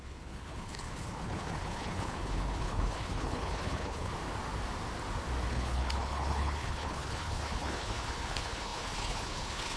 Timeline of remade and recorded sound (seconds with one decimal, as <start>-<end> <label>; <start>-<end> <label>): 0.0-4.1 remade; 4.1-5.5 recorded; 5.5-9.8 remade